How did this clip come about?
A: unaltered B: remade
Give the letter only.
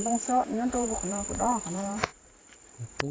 B